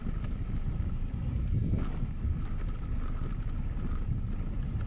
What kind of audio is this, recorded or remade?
recorded